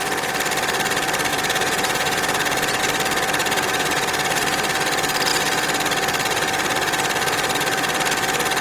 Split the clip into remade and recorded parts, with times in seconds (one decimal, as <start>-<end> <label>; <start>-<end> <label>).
0.0-1.3 recorded; 1.3-2.8 remade; 2.8-3.4 recorded; 3.4-4.4 remade; 4.4-8.6 recorded